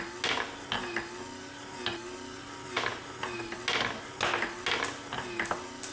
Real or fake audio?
real